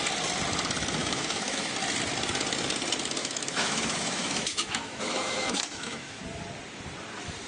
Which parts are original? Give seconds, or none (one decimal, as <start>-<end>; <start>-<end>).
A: 0.0-1.0; 1.7-3.2; 6.2-7.5